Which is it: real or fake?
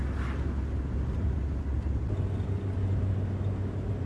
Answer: real